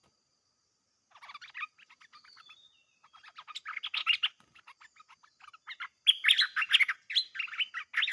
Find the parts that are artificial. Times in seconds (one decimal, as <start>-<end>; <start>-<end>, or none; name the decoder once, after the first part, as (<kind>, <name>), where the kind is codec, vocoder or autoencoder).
none